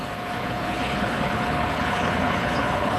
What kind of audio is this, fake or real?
fake